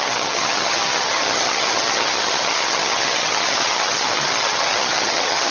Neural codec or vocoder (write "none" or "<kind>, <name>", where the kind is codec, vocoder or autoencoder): vocoder, HiFi-GAN